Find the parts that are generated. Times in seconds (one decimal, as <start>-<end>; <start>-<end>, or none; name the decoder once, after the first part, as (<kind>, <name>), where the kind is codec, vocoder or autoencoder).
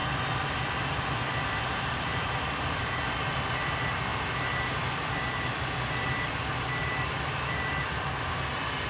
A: 0.0-2.8 (vocoder, BigVGAN v2); 6.8-8.3